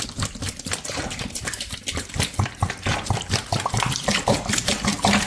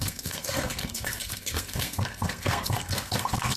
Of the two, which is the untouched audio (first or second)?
first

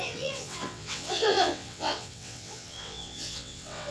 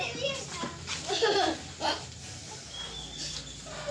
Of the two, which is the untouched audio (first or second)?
second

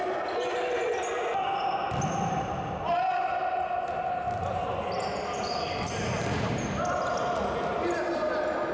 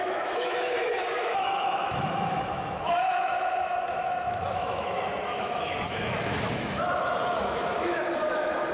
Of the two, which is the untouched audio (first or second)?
first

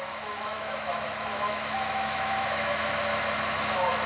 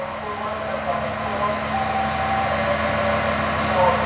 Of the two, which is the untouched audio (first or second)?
second